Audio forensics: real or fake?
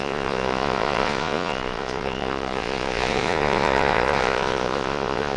fake